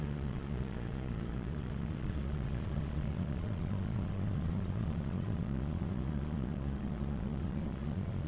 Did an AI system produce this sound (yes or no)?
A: yes